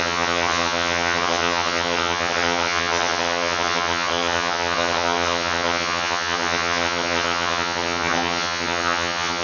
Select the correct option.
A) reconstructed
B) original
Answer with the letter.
A